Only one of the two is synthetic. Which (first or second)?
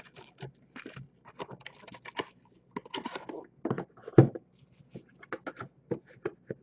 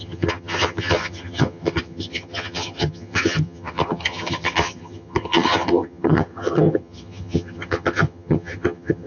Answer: second